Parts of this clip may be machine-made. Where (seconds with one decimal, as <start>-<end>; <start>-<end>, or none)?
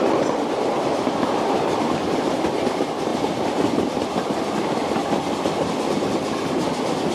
none